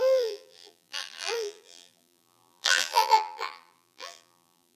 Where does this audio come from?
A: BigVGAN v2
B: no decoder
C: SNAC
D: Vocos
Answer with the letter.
A